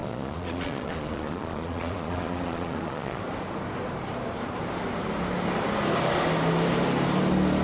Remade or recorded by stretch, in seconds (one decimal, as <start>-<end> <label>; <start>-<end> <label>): 0.0-3.2 remade; 3.2-7.6 recorded

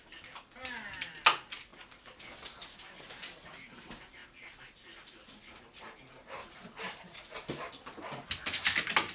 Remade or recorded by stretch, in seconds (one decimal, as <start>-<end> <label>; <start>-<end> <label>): 0.0-9.1 recorded

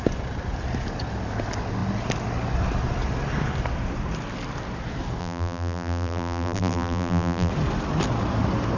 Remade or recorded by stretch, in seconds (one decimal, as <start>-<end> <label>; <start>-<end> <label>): 0.0-5.2 recorded; 5.2-7.5 remade; 7.5-8.8 recorded

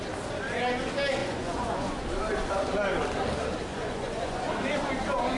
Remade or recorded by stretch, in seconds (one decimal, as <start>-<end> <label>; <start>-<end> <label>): 0.0-1.2 recorded; 1.2-2.0 remade; 2.0-3.7 recorded; 3.7-4.5 remade; 4.5-5.4 recorded

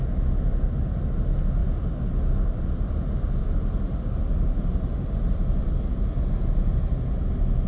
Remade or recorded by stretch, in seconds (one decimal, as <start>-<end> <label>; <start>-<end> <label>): 0.0-1.6 remade; 1.6-2.3 recorded; 2.3-7.7 remade

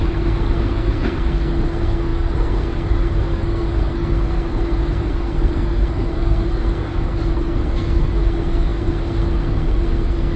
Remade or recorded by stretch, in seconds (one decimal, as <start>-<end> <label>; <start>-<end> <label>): 0.0-10.4 remade

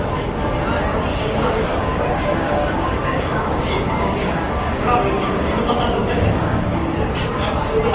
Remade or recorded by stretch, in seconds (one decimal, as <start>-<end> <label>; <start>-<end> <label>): 0.0-1.1 recorded; 1.1-5.6 remade; 5.6-6.0 recorded; 6.0-7.0 remade; 7.0-7.9 recorded